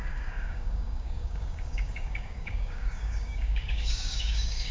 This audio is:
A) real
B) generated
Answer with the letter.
B